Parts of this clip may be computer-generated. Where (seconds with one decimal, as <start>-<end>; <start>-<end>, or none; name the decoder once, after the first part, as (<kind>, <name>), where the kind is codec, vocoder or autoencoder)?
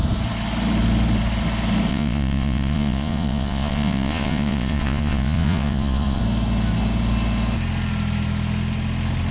1.9-6.2 (vocoder, Vocos)